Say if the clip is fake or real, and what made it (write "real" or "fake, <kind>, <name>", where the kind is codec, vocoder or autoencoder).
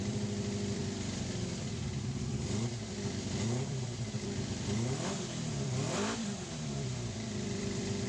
fake, vocoder, BigVGAN v2